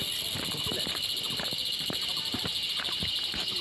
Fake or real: real